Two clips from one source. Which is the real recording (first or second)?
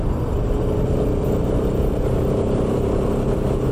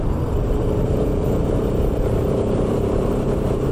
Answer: first